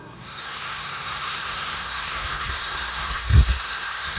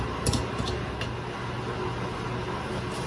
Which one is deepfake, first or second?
first